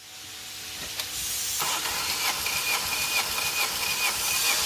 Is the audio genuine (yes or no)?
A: yes